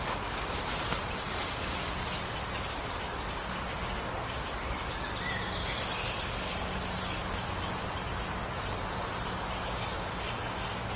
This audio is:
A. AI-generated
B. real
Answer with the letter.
B